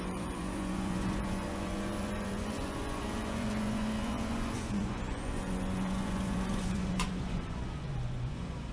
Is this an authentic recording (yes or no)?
no